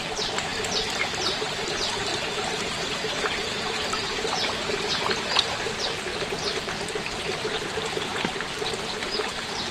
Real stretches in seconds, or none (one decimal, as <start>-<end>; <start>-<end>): 6.1-6.7